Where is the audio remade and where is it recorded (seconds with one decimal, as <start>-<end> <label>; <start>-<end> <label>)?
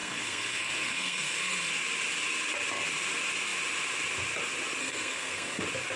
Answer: 0.0-1.7 remade; 1.7-4.8 recorded; 4.8-5.6 remade; 5.6-6.0 recorded